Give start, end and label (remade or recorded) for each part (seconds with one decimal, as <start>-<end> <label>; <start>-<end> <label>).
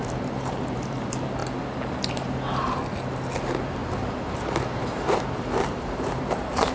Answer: 0.0-1.4 remade; 1.4-2.1 recorded; 2.1-2.8 remade; 2.8-3.4 recorded; 3.4-6.7 remade